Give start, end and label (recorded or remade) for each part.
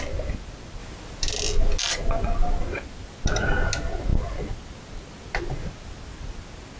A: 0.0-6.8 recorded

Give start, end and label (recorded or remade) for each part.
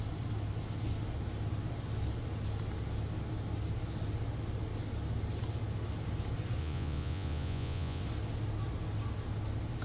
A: 0.0-6.6 recorded; 6.6-8.0 remade; 8.0-9.8 recorded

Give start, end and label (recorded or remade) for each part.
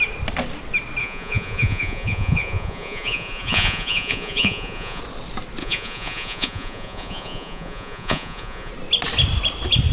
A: 0.0-1.0 recorded; 1.0-5.0 remade; 5.0-5.6 recorded; 5.6-8.7 remade; 8.7-9.9 recorded